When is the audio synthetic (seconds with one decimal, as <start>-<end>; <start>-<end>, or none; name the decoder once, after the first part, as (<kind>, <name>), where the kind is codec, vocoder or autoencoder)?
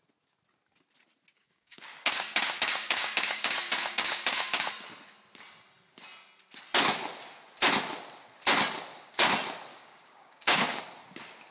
1.3-4.7 (codec, DAC); 9.7-10.8